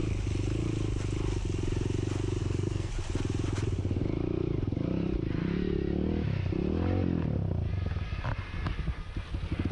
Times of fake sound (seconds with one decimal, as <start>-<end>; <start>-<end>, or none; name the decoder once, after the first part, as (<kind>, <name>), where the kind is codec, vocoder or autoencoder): 2.4-2.9 (codec, SNAC)